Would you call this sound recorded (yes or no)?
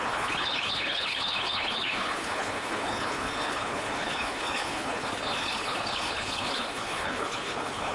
no